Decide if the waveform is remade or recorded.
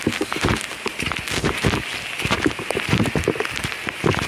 recorded